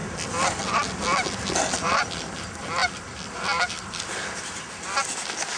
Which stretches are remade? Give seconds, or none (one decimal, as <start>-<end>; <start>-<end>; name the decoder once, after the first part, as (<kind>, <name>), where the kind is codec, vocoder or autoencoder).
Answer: 2.8-4.6 (vocoder, BigVGAN v2)